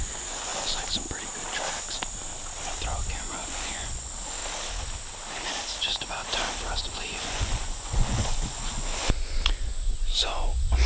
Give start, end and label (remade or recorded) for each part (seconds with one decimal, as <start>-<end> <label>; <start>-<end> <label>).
0.0-0.5 remade; 0.5-3.1 recorded; 3.1-4.4 remade; 4.4-6.8 recorded; 6.8-10.9 remade